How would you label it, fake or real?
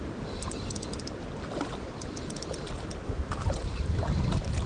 real